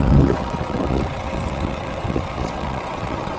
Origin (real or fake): fake